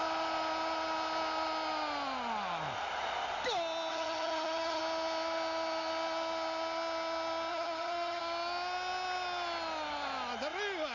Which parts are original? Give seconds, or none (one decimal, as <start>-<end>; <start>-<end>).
0.0-3.9; 4.8-7.5; 8.2-10.9